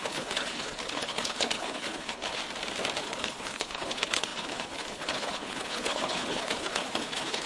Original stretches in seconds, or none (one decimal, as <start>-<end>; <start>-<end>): 2.4-3.0